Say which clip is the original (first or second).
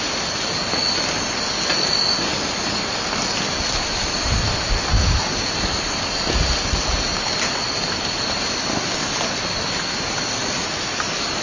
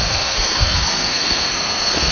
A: first